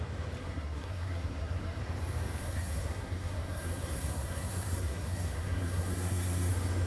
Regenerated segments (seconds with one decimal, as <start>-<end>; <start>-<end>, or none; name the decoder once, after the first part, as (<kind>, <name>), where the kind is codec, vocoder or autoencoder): 0.4-1.8 (codec, SNAC); 2.4-6.5

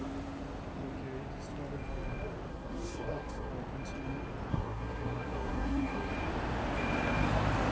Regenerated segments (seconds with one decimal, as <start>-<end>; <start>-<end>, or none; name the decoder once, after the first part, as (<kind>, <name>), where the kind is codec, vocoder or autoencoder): 2.5-3.5 (codec, SNAC); 4.5-6.1